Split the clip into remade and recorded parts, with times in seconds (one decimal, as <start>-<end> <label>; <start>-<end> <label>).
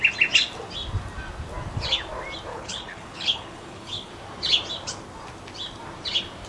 0.0-2.5 recorded; 2.5-4.1 remade; 4.1-6.5 recorded